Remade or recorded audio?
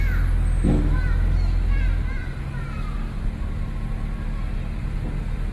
recorded